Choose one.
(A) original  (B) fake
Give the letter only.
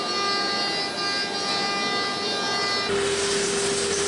A